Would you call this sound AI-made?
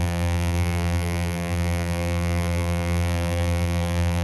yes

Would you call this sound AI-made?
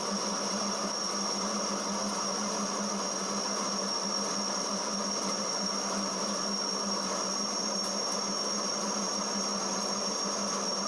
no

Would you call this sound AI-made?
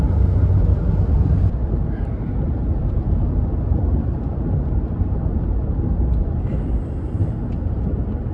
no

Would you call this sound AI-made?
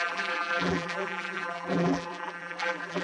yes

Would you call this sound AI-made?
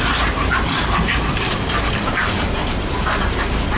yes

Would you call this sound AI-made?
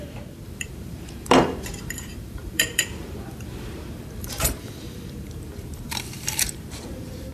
yes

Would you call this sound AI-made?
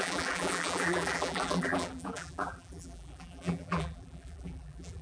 yes